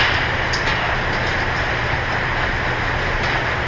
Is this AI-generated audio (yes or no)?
no